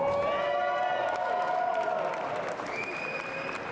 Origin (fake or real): real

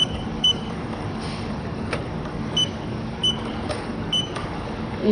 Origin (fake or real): fake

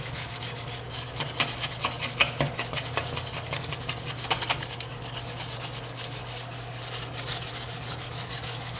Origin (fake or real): fake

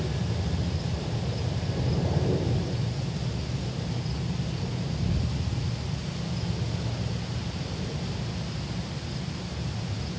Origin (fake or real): real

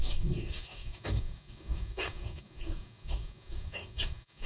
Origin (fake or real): fake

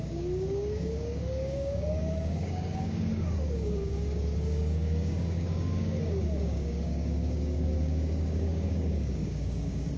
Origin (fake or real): fake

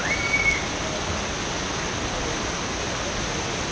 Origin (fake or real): real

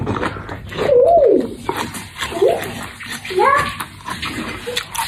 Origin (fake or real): real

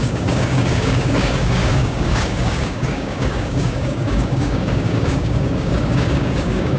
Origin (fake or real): fake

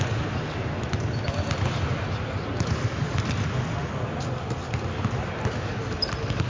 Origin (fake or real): real